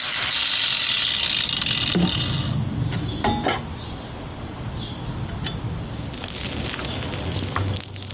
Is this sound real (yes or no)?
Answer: yes